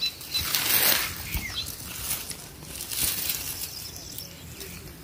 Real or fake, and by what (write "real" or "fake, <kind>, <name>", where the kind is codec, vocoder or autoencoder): real